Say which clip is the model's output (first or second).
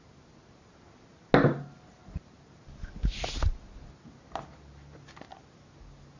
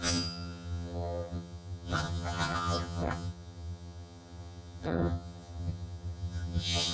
second